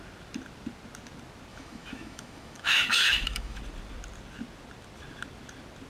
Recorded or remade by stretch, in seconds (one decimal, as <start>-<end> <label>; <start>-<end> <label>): 0.0-1.5 recorded; 1.5-3.6 remade; 3.6-5.9 recorded

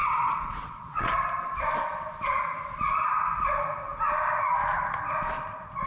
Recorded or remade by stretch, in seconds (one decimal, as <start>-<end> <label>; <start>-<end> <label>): 0.0-1.1 remade; 1.1-5.9 recorded

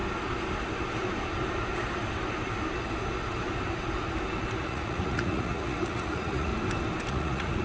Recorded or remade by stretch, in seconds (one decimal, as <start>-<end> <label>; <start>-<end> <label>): 0.0-4.6 recorded; 4.6-6.5 remade; 6.5-7.1 recorded; 7.1-7.6 remade